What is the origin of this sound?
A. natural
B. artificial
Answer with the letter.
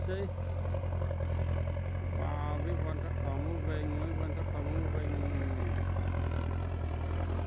A